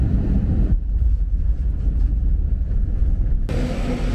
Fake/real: real